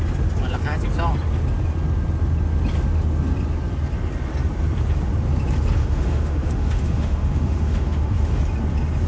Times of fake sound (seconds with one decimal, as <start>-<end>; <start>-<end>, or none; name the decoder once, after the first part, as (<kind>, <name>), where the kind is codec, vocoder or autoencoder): 5.8-8.4 (autoencoder, DAC-VAE)